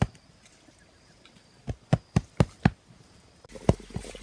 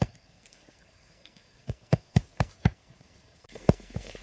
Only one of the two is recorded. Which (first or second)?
first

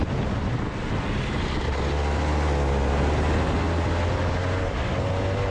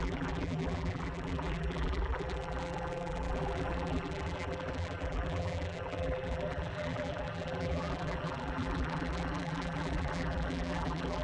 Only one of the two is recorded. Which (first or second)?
first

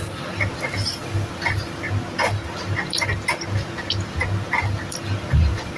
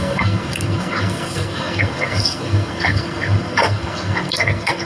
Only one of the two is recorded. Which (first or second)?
first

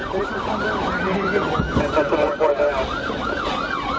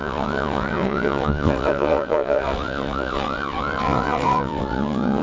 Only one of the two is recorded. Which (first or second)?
first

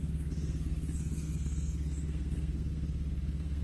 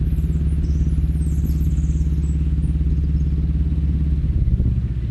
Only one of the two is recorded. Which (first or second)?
second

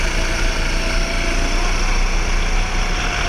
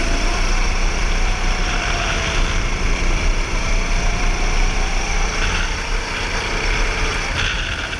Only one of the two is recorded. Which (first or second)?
first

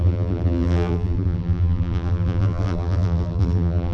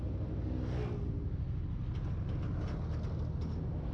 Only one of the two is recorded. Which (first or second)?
second